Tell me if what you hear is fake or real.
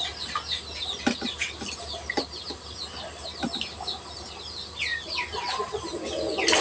real